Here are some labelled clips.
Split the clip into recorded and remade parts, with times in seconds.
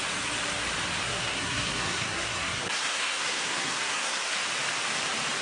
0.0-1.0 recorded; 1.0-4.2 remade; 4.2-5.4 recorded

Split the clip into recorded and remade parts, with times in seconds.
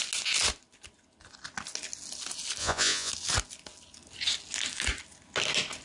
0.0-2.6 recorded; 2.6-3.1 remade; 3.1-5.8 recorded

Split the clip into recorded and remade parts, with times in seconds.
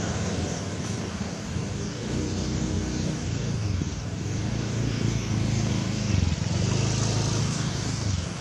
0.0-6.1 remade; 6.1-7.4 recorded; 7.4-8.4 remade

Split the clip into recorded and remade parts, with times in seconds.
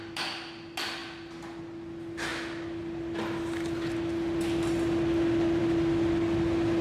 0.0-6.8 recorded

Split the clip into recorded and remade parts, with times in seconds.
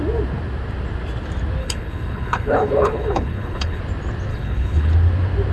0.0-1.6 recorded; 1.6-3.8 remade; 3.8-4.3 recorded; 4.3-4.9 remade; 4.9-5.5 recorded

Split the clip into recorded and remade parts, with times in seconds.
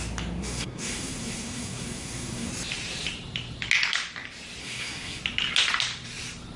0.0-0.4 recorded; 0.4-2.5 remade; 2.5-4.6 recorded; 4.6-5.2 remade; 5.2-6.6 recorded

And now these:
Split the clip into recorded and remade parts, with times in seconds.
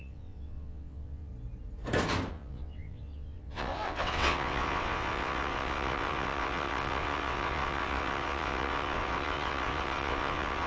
0.0-1.3 remade; 1.3-2.3 recorded; 2.3-10.7 remade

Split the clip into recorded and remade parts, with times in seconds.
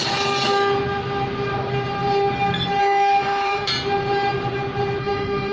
0.0-2.8 recorded; 2.8-3.7 remade; 3.7-5.0 recorded; 5.0-5.5 remade